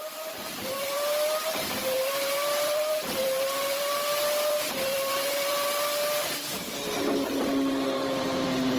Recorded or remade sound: remade